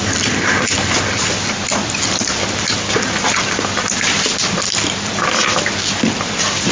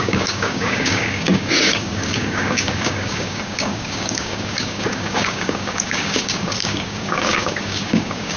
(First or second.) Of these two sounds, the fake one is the second